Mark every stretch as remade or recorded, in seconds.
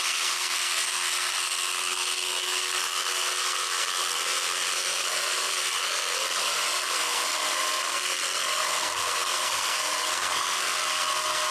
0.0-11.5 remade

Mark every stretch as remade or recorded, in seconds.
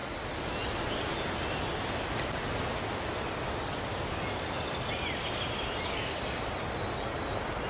0.0-7.7 recorded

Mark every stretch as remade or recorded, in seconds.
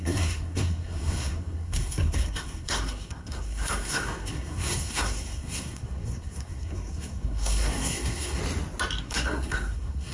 0.0-8.4 remade; 8.4-9.0 recorded; 9.0-10.1 remade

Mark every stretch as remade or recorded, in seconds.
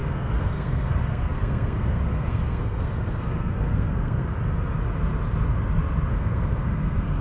0.0-4.3 remade; 4.3-6.1 recorded; 6.1-7.2 remade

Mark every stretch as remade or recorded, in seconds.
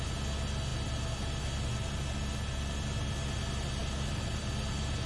0.0-5.1 recorded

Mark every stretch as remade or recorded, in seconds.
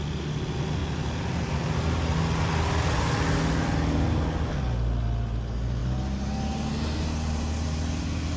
0.0-8.4 recorded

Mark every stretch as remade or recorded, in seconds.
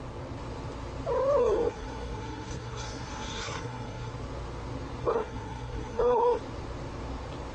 0.0-1.4 recorded; 1.4-4.1 remade; 4.1-5.0 recorded; 5.0-6.4 remade; 6.4-7.5 recorded